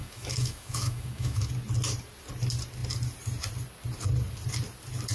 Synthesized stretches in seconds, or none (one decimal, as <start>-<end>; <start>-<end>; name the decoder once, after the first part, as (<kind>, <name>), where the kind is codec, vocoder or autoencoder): 0.0-1.5 (autoencoder, DAC-VAE)